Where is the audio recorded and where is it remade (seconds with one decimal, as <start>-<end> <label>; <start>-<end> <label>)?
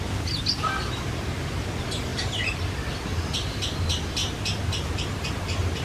0.0-2.1 recorded; 2.1-2.9 remade; 2.9-5.8 recorded